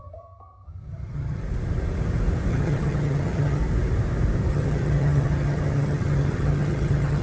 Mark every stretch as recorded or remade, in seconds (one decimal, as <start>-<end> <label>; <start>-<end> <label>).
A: 0.0-1.4 remade; 1.4-2.5 recorded; 2.5-3.6 remade; 3.6-4.5 recorded; 4.5-7.2 remade